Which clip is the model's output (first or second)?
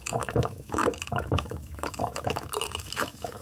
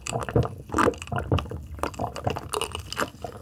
first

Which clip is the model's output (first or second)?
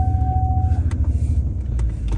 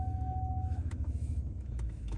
second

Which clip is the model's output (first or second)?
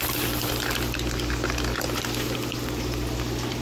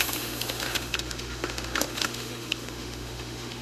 second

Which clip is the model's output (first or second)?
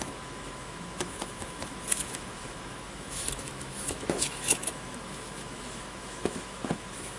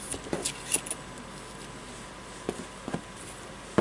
first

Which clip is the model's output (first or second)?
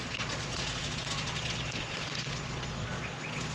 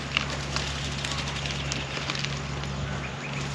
first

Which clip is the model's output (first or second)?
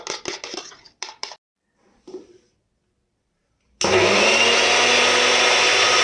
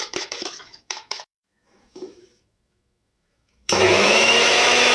second